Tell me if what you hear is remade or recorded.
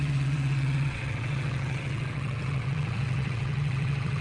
remade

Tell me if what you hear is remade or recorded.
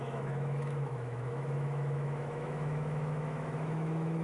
remade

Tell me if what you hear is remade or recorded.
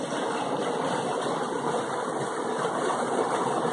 recorded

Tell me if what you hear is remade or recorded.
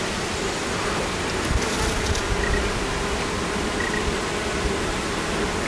recorded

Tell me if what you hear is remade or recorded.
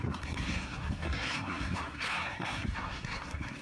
remade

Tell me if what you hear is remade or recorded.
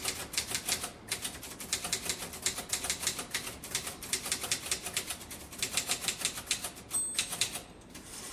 recorded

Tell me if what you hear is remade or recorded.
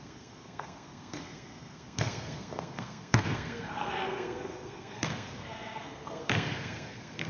remade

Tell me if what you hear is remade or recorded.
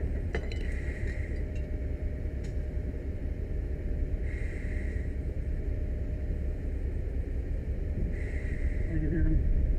remade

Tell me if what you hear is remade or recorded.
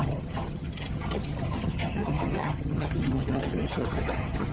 remade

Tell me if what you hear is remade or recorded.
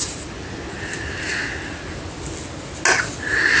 recorded